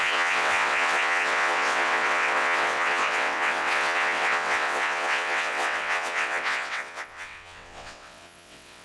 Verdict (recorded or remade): remade